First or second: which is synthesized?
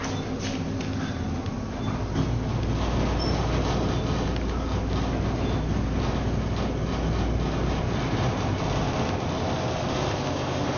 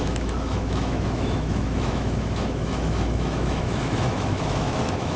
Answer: second